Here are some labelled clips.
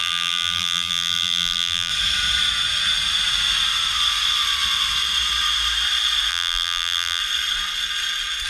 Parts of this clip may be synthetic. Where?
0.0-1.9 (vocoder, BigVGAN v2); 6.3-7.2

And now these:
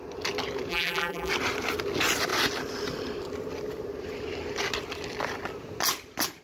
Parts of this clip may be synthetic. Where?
0.7-1.3 (vocoder, BigVGAN v2)